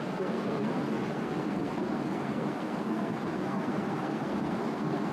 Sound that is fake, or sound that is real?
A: fake